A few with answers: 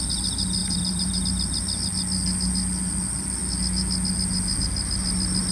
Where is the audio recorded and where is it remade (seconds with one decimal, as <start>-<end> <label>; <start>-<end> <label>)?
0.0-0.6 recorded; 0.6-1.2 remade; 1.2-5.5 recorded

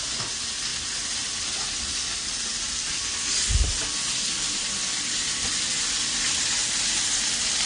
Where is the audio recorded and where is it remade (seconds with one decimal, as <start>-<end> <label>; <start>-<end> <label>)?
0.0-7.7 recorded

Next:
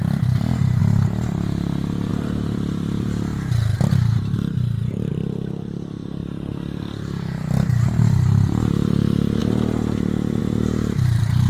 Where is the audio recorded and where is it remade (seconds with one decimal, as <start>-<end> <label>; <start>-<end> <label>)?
0.0-0.8 remade; 0.8-2.1 recorded; 2.1-3.3 remade; 3.3-5.1 recorded; 5.1-6.2 remade; 6.2-8.1 recorded; 8.1-11.5 remade

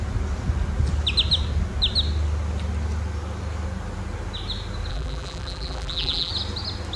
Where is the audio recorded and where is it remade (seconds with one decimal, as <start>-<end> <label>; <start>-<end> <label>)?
0.0-4.9 recorded; 4.9-6.3 remade; 6.3-7.0 recorded

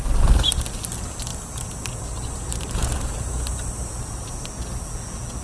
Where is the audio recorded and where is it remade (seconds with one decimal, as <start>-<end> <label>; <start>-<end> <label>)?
0.0-1.3 recorded; 1.3-4.5 remade; 4.5-5.4 recorded

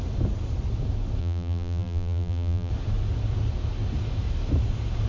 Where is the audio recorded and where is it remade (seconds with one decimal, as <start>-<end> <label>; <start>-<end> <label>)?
0.0-1.2 recorded; 1.2-2.7 remade; 2.7-5.1 recorded

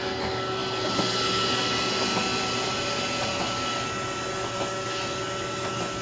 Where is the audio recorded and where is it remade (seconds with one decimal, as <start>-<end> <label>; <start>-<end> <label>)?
0.0-6.0 recorded